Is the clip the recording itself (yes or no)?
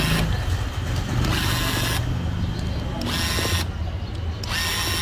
yes